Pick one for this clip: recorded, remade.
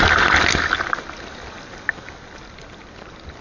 recorded